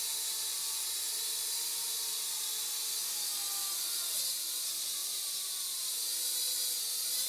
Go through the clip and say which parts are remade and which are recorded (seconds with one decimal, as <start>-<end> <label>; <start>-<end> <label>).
0.0-5.0 recorded; 5.0-5.9 remade; 5.9-7.3 recorded